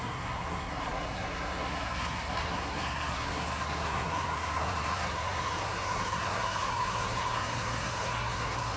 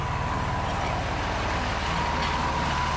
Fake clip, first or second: first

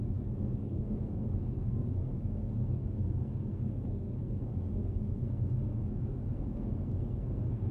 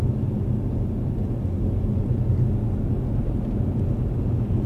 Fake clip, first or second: first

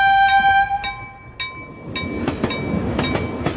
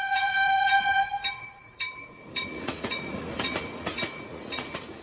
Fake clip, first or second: second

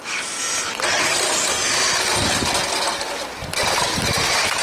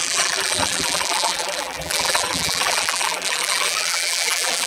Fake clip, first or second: second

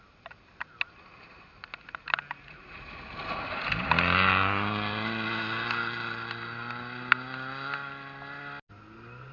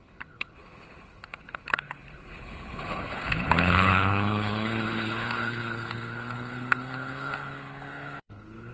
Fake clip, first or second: second